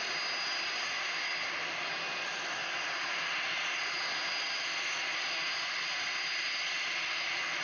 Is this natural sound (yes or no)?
yes